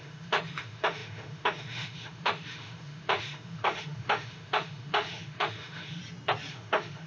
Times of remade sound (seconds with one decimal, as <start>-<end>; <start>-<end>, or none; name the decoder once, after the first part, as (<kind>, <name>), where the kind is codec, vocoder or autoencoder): 0.0-6.0 (autoencoder, DAC-VAE); 6.5-7.1